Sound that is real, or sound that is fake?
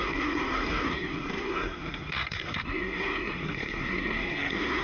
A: fake